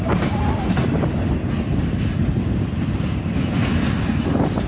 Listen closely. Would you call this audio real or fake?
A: real